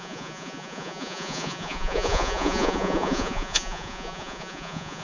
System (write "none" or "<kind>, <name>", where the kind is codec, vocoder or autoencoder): vocoder, Vocos